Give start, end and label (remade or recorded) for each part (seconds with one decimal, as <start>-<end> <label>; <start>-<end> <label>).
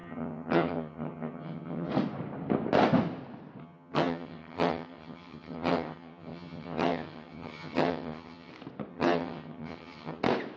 0.0-1.9 remade; 1.9-3.6 recorded; 3.6-8.5 remade; 8.5-8.9 recorded; 8.9-10.2 remade; 10.2-10.6 recorded